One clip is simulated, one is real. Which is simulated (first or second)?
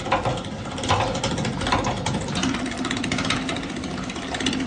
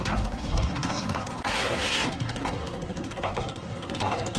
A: second